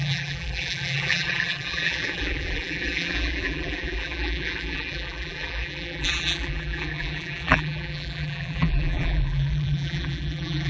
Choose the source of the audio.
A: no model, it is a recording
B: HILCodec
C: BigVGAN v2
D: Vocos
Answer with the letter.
C